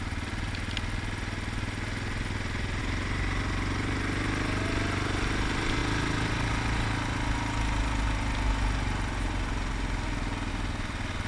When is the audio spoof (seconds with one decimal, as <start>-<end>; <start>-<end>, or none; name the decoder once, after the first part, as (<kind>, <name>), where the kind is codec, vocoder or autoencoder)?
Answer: 2.8-4.7 (vocoder, BigVGAN v2)

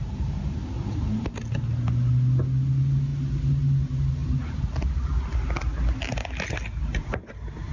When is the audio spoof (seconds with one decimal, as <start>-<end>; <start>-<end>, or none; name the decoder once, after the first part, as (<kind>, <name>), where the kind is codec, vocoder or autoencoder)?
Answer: 0.0-1.4 (vocoder, BigVGAN v2)